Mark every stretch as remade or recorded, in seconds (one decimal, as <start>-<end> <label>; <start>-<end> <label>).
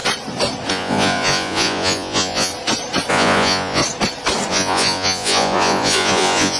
0.0-0.7 recorded; 0.7-2.5 remade; 2.5-3.1 recorded; 3.1-3.8 remade; 3.8-4.5 recorded; 4.5-6.6 remade